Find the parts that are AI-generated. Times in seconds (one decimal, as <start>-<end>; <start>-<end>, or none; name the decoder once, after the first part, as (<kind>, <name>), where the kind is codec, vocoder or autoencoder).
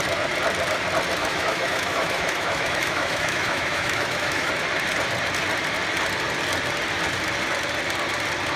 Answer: 1.2-4.5 (autoencoder, DAC-VAE)